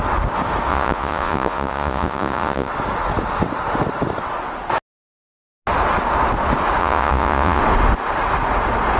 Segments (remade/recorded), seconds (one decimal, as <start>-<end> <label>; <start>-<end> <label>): 0.0-0.7 recorded; 0.7-2.7 remade; 2.7-6.8 recorded; 6.8-7.6 remade; 7.6-9.0 recorded